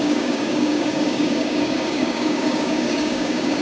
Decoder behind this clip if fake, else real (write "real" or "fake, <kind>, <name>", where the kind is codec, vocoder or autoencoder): fake, codec, DAC